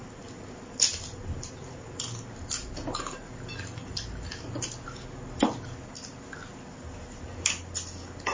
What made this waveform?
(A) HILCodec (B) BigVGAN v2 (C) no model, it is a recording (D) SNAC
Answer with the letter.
C